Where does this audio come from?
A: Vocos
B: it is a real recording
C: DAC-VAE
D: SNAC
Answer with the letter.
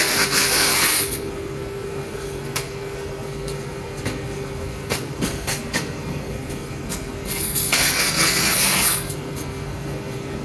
D